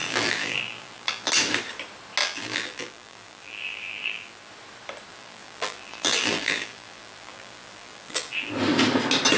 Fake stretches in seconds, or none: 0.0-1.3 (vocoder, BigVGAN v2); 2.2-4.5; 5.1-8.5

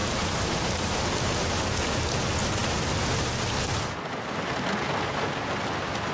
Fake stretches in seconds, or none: 0.0-1.1 (vocoder, BigVGAN v2); 2.6-3.4

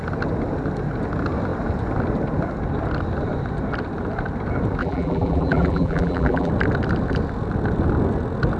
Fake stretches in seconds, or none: 4.8-6.5 (vocoder, BigVGAN v2)

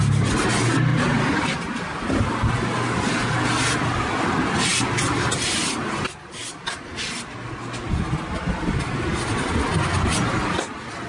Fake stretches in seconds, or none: 0.9-3.0 (vocoder, BigVGAN v2); 4.7-9.6

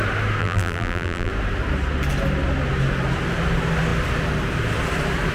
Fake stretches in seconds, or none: 0.4-1.3 (vocoder, BigVGAN v2)

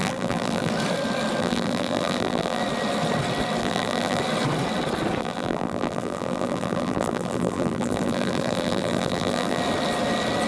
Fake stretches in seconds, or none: 0.0-0.7 (vocoder, BigVGAN v2); 1.4-2.6; 3.6-4.2; 5.2-9.6